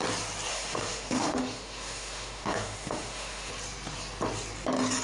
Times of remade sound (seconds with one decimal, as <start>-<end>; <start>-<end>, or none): 0.5-3.5